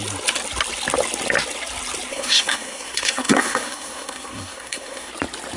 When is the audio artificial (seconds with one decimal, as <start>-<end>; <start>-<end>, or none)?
2.1-5.1